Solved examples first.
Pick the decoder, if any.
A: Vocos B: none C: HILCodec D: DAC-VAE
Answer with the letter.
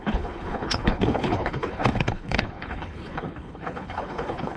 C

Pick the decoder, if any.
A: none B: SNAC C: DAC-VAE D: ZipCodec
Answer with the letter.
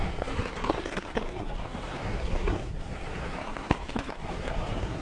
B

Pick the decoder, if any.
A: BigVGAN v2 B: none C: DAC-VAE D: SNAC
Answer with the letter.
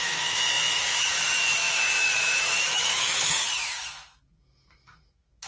C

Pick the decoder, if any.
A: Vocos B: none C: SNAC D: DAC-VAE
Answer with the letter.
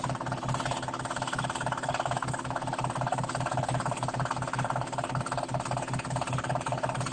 B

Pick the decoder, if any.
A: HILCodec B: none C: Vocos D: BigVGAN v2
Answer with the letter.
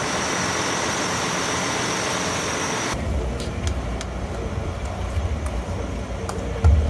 B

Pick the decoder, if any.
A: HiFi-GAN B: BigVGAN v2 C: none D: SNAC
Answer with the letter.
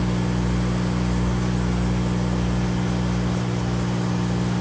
C